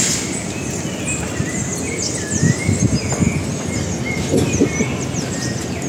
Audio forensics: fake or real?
real